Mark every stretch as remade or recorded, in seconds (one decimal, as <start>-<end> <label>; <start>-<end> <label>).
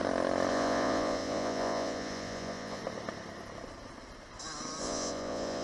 0.0-0.5 recorded; 0.5-2.8 remade; 2.8-4.8 recorded; 4.8-5.6 remade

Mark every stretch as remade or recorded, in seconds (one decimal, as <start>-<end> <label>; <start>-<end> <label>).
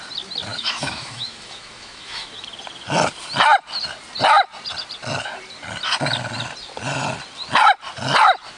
0.0-0.5 recorded; 0.5-2.3 remade; 2.3-8.6 recorded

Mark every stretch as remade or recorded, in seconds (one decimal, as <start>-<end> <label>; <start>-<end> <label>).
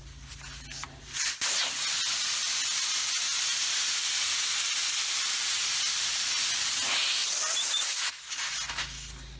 0.0-7.2 recorded; 7.2-7.8 remade; 7.8-9.4 recorded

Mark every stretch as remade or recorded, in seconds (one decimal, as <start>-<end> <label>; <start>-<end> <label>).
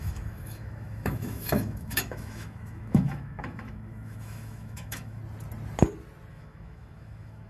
0.0-5.2 remade; 5.2-6.3 recorded; 6.3-7.5 remade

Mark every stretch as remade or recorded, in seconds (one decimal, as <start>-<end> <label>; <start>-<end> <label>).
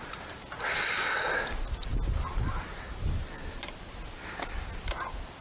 0.0-5.4 recorded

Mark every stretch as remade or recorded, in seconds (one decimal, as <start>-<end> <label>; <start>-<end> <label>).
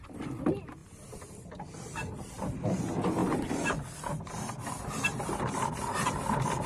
0.0-0.8 recorded; 0.8-2.8 remade; 2.8-3.2 recorded; 3.2-4.5 remade; 4.5-6.7 recorded